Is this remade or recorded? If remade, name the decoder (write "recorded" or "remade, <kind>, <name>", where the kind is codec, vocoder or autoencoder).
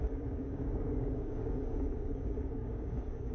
remade, codec, DAC